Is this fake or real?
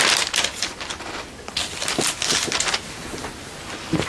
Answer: real